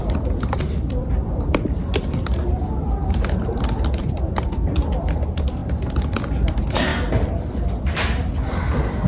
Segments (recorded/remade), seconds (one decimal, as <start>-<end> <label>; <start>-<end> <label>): 0.0-1.9 remade; 1.9-4.0 recorded; 4.0-6.9 remade; 6.9-7.7 recorded; 7.7-9.1 remade